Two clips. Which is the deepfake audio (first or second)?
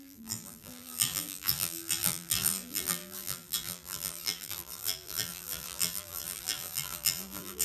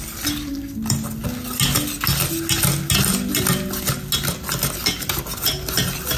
first